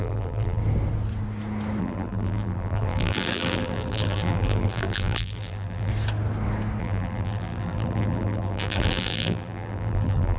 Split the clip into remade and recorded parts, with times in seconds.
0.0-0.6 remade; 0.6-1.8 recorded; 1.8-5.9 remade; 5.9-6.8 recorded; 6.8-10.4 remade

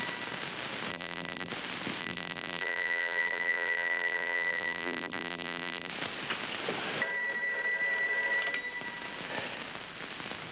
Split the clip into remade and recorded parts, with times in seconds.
0.0-0.9 recorded; 0.9-1.5 remade; 1.5-2.0 recorded; 2.0-5.9 remade; 5.9-10.5 recorded

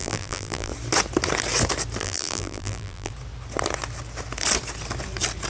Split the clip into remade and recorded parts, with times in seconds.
0.0-0.7 remade; 0.7-2.0 recorded; 2.0-3.1 remade; 3.1-5.5 recorded

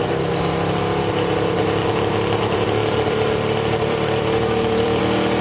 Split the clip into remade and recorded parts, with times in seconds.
0.0-1.8 recorded; 1.8-5.0 remade; 5.0-5.4 recorded

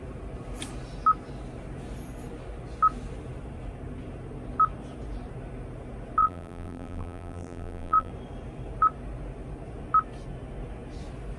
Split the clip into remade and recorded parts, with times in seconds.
0.0-6.2 recorded; 6.2-8.1 remade; 8.1-11.4 recorded

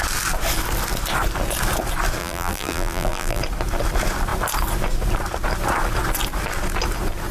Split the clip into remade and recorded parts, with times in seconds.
0.0-2.2 recorded; 2.2-3.4 remade; 3.4-7.3 recorded

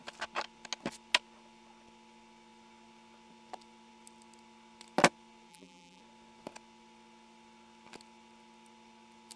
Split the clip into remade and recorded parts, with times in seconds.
0.0-5.5 recorded; 5.5-6.0 remade; 6.0-9.4 recorded